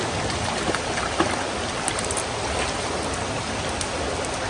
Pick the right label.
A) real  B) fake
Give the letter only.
A